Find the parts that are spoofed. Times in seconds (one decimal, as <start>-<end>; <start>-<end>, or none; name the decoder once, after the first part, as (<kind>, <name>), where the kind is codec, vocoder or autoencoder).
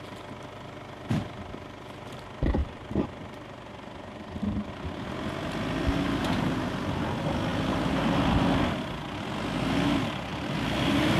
2.6-4.7 (vocoder, BigVGAN v2); 10.3-11.2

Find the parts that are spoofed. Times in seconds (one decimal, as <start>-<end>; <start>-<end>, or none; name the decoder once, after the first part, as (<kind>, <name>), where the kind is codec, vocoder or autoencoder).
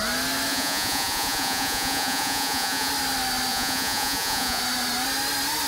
0.5-2.9 (vocoder, Vocos); 3.5-4.6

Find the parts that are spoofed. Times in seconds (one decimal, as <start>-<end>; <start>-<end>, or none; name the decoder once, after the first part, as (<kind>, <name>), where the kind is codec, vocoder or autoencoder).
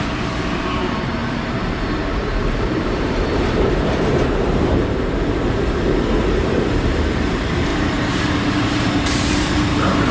0.0-10.1 (vocoder, BigVGAN v2)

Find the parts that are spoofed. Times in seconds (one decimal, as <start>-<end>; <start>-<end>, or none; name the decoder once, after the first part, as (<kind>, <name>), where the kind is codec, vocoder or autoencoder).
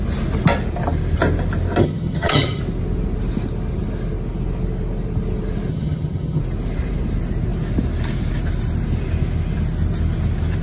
1.8-2.6 (vocoder, HiFi-GAN); 5.7-6.4